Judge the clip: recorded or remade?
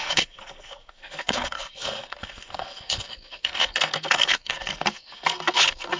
remade